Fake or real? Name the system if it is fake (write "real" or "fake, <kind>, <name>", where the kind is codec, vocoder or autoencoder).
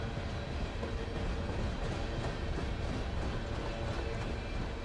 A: real